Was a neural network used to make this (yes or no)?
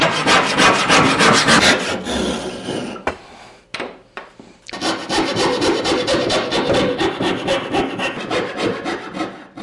no